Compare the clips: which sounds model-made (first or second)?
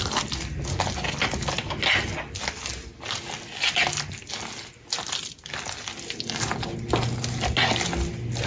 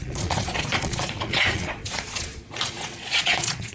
second